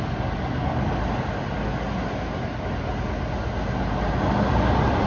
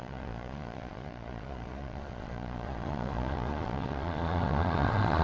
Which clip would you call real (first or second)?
first